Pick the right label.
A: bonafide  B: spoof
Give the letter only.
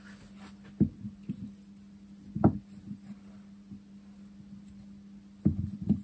A